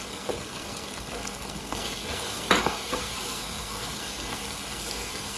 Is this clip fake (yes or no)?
yes